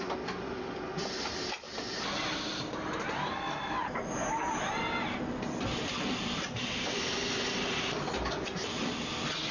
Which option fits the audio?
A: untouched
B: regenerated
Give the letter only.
A